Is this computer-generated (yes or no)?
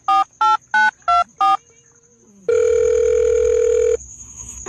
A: no